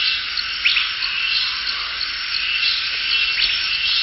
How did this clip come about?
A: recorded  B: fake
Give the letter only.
A